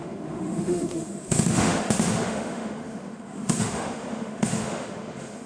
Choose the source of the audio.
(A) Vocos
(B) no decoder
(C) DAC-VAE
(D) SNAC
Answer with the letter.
C